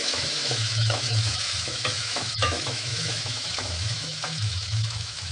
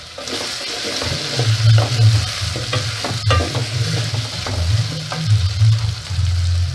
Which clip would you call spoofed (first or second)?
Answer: first